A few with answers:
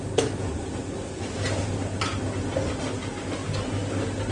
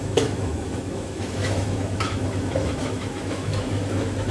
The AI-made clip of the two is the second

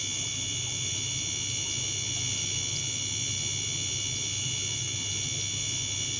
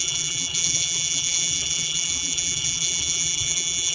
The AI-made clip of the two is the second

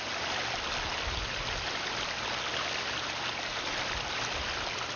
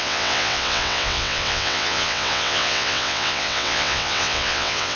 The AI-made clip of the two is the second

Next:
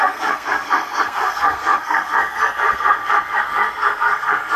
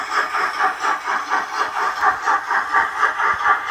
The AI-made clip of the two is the first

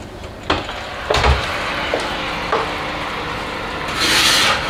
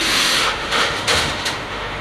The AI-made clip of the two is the second